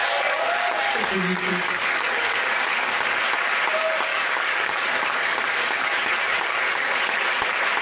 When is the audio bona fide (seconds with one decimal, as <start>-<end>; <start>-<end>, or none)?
3.2-4.1; 7.2-7.8